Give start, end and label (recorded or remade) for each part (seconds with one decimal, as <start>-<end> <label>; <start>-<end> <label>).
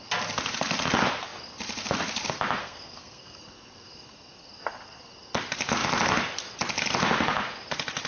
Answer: 0.0-2.6 recorded; 2.6-3.4 remade; 3.4-8.1 recorded